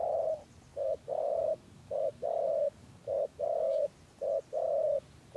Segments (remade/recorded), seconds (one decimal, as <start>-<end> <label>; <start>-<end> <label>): 0.0-0.7 recorded; 0.7-3.9 remade; 3.9-5.4 recorded